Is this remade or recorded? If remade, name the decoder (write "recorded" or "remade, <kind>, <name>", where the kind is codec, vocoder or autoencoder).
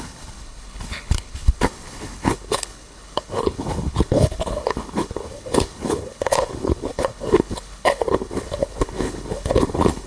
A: remade, codec, HILCodec